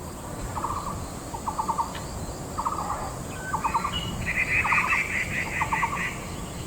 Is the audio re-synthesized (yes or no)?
no